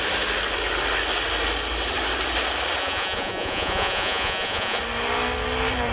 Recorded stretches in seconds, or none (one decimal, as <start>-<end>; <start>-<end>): 0.0-2.8; 4.8-5.9